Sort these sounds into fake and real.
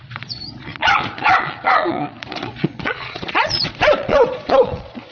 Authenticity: fake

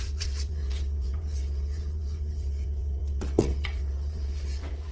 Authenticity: fake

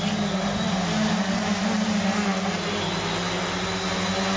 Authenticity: real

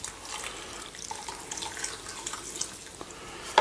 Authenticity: real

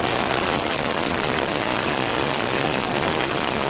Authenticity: fake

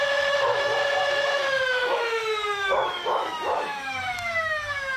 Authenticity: fake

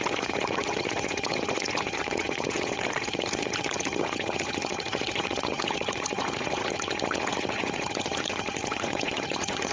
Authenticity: fake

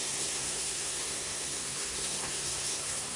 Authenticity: fake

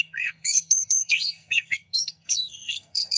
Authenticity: fake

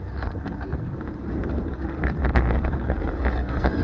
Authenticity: fake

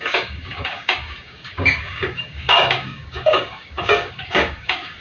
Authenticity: fake